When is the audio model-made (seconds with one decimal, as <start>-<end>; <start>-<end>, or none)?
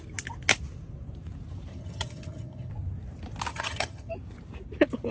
1.7-2.7; 3.5-4.1